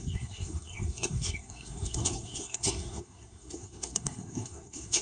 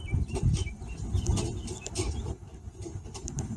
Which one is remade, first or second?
first